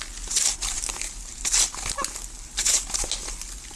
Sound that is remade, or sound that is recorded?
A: recorded